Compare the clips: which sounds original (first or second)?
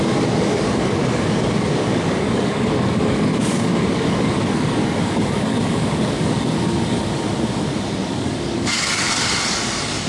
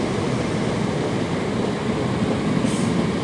second